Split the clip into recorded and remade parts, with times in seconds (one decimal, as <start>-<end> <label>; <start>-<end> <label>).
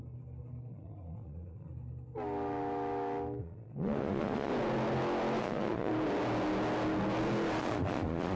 0.0-0.7 recorded; 0.7-1.7 remade; 1.7-3.4 recorded; 3.4-4.5 remade; 4.5-5.4 recorded; 5.4-5.9 remade; 5.9-7.6 recorded; 7.6-8.4 remade